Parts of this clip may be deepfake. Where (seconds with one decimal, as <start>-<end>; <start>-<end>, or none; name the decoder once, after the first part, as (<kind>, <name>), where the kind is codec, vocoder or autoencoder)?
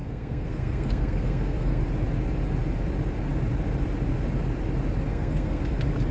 0.0-1.8 (codec, SNAC); 5.1-5.6